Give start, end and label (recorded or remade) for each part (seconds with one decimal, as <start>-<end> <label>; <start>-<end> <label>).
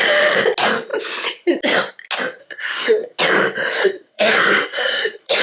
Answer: 0.0-2.4 recorded; 2.4-3.2 remade; 3.2-3.8 recorded; 3.8-5.4 remade